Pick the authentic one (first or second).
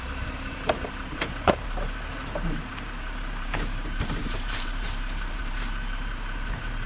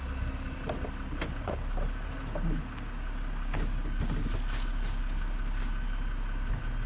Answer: second